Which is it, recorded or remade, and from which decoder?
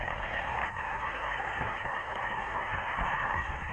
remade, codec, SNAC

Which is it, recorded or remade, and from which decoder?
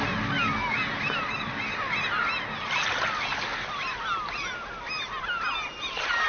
recorded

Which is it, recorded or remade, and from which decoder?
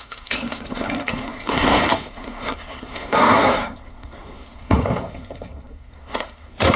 remade, codec, SNAC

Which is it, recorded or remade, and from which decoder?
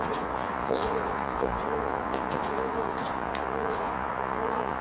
remade, vocoder, Vocos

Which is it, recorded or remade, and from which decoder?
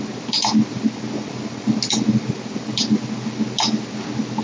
recorded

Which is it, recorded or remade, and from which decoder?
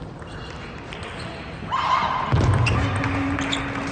recorded